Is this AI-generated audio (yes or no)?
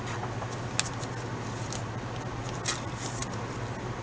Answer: no